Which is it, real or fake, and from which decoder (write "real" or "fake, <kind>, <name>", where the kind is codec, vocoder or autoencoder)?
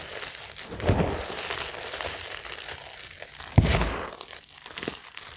real